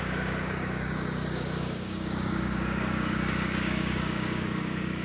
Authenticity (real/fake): fake